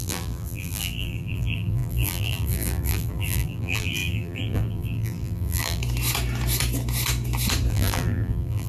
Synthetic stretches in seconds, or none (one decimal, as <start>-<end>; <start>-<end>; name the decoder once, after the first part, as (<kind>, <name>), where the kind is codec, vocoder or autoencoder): 0.0-5.8 (vocoder, BigVGAN v2); 7.7-8.7